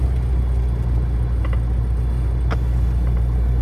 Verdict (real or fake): real